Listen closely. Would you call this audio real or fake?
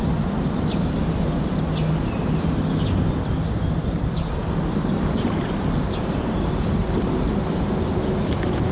real